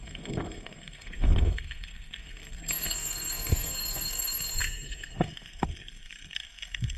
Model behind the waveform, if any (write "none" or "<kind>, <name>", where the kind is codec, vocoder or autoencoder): codec, SNAC